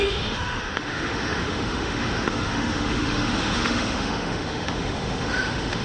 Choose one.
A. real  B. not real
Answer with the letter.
B